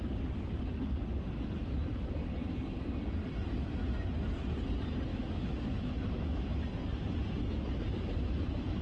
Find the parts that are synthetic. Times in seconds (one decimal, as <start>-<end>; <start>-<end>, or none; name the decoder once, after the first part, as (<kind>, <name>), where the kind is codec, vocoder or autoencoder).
5.1-6.6 (autoencoder, DAC-VAE)